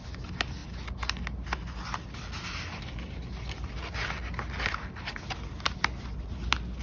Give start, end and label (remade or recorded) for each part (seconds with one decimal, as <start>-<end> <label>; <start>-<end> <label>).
0.0-6.8 recorded